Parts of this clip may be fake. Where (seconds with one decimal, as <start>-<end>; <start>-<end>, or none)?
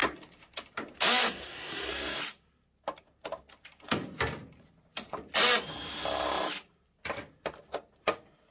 1.2-1.9